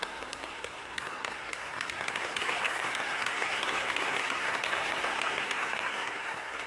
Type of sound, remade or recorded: remade